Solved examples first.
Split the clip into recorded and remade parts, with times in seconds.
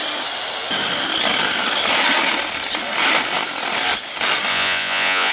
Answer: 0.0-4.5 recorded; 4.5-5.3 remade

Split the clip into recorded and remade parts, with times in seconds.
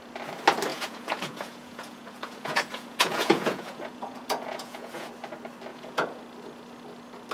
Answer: 0.0-0.7 recorded; 0.7-5.1 remade; 5.1-5.7 recorded; 5.7-6.2 remade; 6.2-7.3 recorded